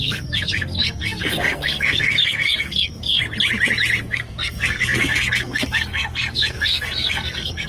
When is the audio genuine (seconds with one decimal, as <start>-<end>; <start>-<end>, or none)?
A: 3.2-4.0